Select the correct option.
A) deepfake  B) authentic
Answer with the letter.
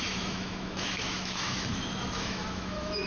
A